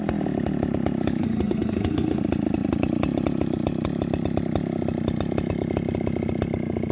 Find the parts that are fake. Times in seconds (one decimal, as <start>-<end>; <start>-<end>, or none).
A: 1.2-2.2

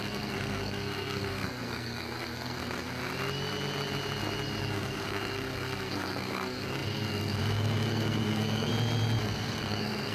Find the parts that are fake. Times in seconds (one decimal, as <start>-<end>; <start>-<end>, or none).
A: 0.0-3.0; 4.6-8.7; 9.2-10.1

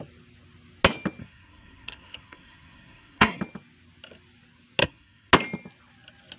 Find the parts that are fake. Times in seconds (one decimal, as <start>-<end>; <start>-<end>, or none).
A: 1.2-3.4; 4.8-5.3